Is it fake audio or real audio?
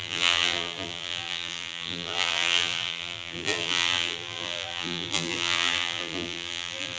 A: fake